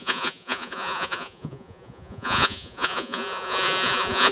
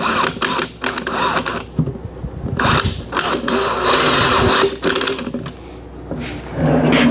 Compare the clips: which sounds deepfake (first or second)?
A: first